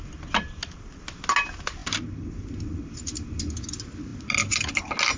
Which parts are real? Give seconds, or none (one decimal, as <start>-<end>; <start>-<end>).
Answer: 0.0-5.2